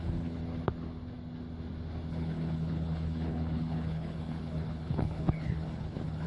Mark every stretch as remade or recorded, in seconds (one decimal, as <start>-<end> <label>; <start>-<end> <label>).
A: 0.0-0.4 remade; 0.4-2.1 recorded; 2.1-6.3 remade